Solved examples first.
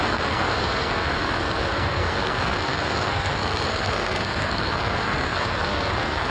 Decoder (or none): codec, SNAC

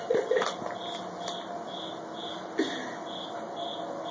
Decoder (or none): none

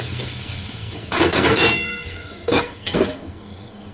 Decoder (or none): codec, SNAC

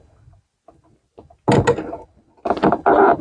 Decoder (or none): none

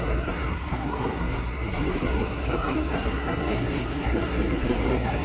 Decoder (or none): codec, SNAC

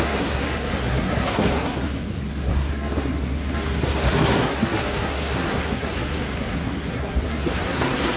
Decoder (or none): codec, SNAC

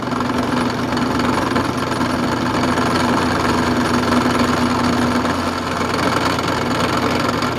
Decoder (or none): none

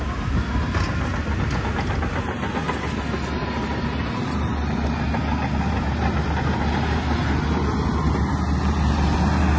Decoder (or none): none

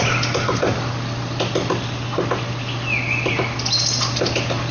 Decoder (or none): none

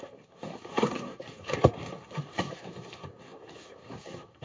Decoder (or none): codec, SNAC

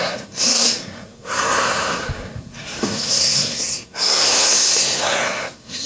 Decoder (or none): codec, SNAC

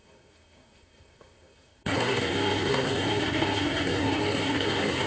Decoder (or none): codec, SNAC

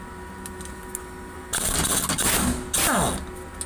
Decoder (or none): none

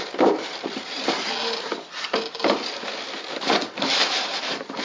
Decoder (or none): none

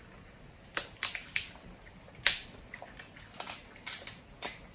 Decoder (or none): none